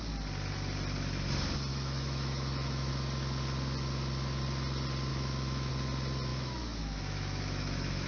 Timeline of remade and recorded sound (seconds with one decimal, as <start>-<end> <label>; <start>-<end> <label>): 0.0-1.7 recorded; 1.7-2.9 remade; 2.9-5.1 recorded; 5.1-5.7 remade; 5.7-6.3 recorded; 6.3-8.1 remade